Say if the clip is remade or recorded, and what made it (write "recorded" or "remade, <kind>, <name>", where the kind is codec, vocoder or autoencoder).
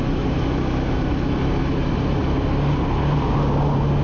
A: recorded